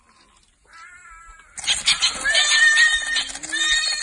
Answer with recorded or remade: recorded